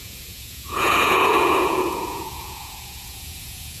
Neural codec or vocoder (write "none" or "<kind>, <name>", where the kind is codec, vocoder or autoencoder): vocoder, Vocos